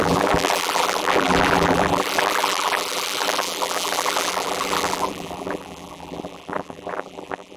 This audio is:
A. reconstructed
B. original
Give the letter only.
A